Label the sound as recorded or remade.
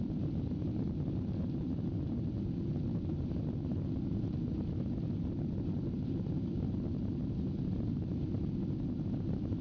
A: recorded